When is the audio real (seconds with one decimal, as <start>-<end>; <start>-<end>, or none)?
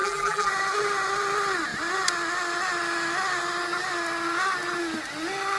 0.5-5.6